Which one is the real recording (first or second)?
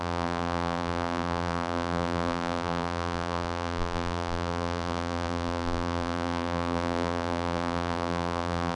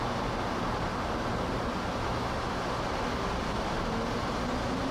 second